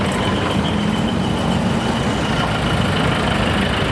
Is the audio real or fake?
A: real